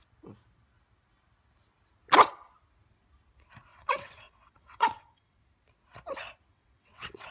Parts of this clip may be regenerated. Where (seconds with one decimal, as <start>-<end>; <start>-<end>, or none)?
3.7-5.4; 6.5-7.3